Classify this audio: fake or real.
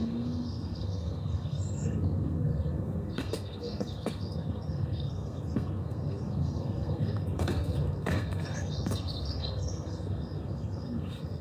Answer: fake